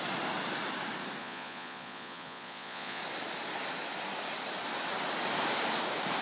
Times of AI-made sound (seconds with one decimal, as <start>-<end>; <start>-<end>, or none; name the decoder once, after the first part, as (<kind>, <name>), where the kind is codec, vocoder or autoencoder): 1.2-3.0 (vocoder, Vocos)